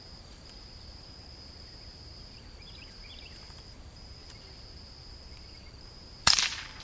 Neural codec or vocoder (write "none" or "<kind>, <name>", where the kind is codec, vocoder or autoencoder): vocoder, BigVGAN v2